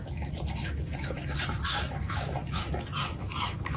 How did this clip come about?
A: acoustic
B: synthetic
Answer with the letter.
B